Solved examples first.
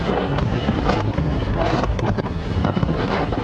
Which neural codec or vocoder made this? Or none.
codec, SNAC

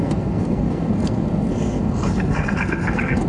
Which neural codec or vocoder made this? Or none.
codec, SNAC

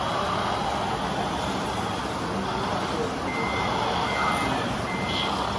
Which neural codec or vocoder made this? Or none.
none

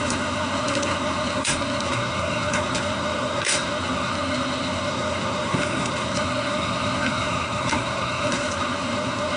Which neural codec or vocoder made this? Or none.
codec, SNAC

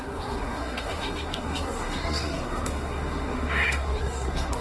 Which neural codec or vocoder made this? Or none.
codec, SNAC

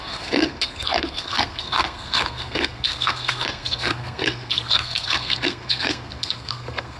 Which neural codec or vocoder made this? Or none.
codec, SNAC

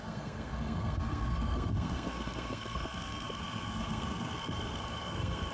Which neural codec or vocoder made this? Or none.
codec, SNAC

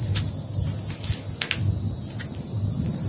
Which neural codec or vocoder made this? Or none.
none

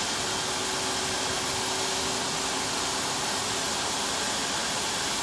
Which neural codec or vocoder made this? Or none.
none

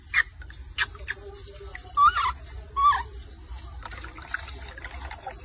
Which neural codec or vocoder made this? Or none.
none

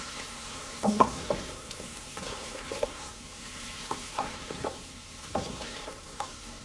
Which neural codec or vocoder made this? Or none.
codec, SNAC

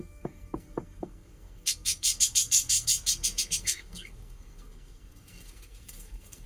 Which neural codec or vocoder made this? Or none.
codec, SNAC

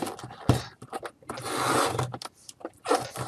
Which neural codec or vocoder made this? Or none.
none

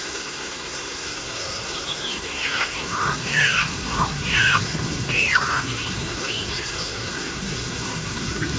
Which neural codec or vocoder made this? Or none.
codec, SNAC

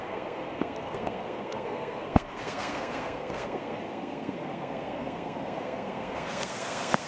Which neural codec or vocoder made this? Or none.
codec, SNAC